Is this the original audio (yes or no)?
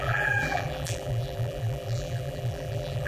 no